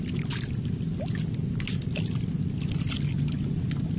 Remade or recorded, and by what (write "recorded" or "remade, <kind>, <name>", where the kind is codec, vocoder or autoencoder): recorded